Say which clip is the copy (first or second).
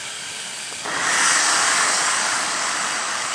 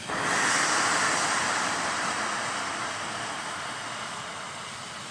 first